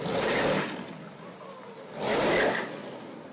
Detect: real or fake real